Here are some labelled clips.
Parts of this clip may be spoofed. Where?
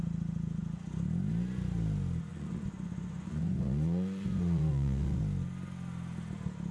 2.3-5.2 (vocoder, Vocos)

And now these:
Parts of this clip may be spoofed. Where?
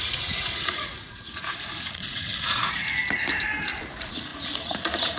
0.0-2.8 (vocoder, Vocos); 3.8-5.2